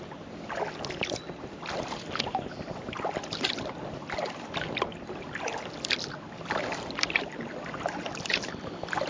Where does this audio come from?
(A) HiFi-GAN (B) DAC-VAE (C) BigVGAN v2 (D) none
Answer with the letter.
D